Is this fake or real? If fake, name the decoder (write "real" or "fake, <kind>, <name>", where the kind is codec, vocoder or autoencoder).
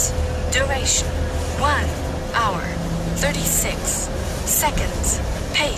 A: real